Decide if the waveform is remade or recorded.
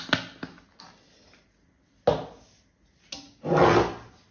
recorded